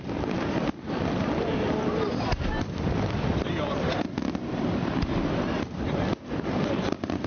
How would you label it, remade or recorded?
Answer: remade